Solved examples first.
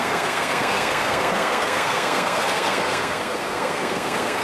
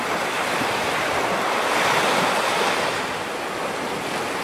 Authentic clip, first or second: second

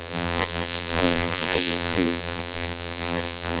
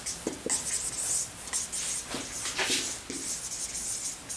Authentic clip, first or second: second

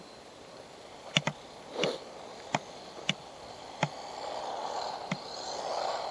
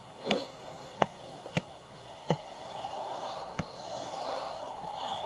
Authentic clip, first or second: first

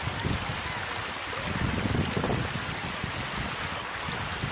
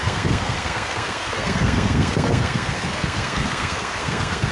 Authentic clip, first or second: first